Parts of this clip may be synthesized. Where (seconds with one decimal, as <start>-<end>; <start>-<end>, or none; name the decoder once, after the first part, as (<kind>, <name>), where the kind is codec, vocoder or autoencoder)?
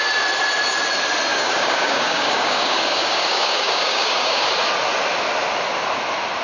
1.3-4.5 (codec, DAC)